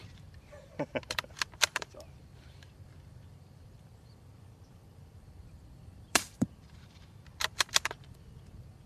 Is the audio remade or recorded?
remade